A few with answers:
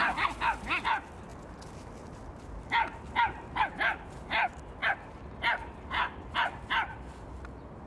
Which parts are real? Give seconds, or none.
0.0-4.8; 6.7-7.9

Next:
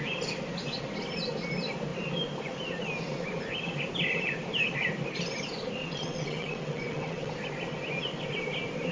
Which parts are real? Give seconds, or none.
0.0-5.8; 7.3-8.9